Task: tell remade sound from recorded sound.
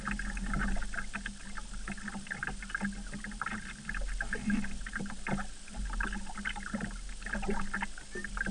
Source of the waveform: recorded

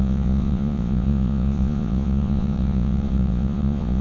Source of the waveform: remade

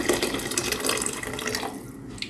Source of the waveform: recorded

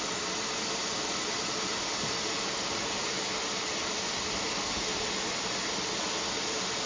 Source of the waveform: recorded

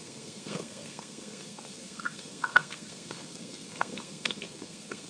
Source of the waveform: remade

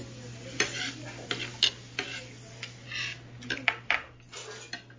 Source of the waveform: recorded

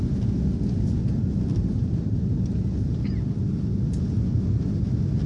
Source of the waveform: recorded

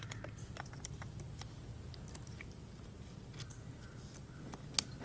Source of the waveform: recorded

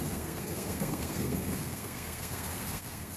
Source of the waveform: remade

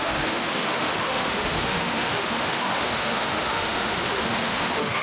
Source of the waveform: remade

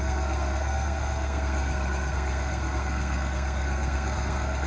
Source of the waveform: remade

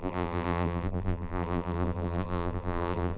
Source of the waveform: remade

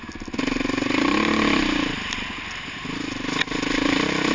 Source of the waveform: recorded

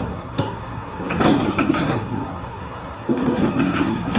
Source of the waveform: remade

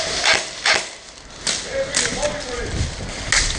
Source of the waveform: recorded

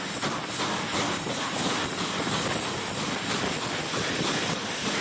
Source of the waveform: recorded